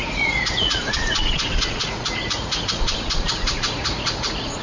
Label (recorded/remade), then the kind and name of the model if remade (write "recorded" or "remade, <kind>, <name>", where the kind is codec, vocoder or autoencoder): remade, vocoder, Vocos